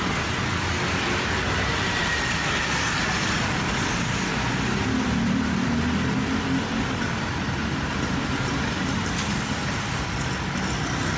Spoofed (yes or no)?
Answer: no